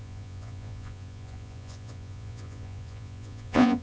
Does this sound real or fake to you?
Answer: fake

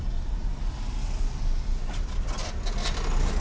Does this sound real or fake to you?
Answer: real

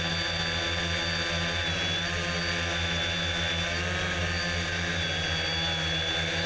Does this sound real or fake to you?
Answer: real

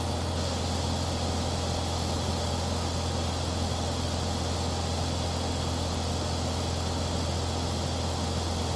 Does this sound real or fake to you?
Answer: real